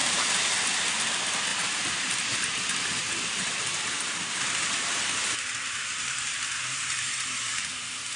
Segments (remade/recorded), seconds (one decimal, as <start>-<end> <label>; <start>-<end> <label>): 0.0-0.5 remade; 0.5-1.5 recorded; 1.5-2.2 remade; 2.2-3.0 recorded; 3.0-7.7 remade; 7.7-8.2 recorded

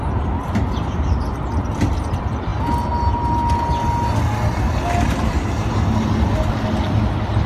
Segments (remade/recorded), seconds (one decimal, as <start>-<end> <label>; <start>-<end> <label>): 0.0-7.5 recorded

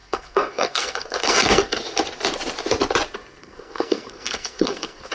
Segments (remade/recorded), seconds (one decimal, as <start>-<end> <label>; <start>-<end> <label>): 0.0-1.8 remade; 1.8-3.4 recorded; 3.4-5.1 remade

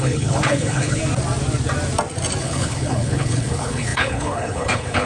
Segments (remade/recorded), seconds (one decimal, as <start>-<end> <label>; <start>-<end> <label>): 0.0-1.0 remade; 1.0-2.4 recorded; 2.4-5.1 remade

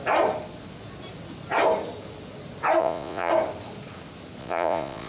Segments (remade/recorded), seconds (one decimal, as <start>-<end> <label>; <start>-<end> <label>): 0.0-2.8 recorded; 2.8-3.3 remade; 3.3-4.4 recorded; 4.4-5.1 remade

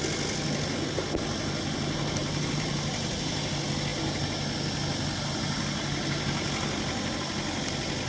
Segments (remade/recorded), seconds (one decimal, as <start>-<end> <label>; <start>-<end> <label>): 0.0-2.2 recorded; 2.2-3.5 remade; 3.5-8.1 recorded